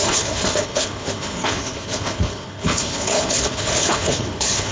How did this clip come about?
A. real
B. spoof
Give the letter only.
B